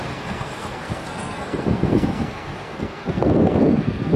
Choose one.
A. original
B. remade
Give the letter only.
B